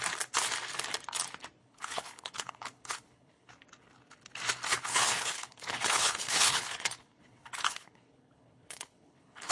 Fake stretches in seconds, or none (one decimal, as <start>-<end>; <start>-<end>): 1.6-3.5; 4.7-9.5